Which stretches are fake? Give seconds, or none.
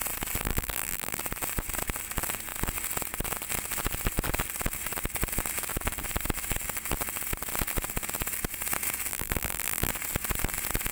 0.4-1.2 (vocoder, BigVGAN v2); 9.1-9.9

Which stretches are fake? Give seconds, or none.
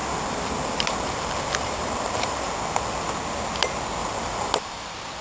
0.0-3.1 (vocoder, BigVGAN v2); 4.0-4.8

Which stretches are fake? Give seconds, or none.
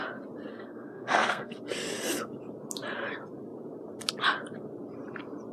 0.5-1.6 (codec, SNAC)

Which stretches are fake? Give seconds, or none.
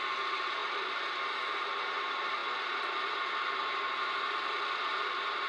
0.0-0.6 (vocoder, BigVGAN v2); 1.9-5.5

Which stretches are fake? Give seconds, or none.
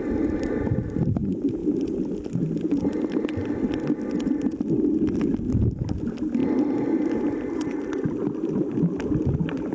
none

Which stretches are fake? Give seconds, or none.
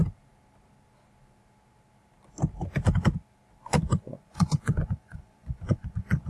3.6-6.3 (vocoder, Vocos)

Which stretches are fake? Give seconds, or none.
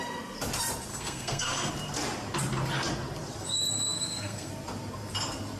0.9-1.7 (codec, SNAC); 3.4-4.5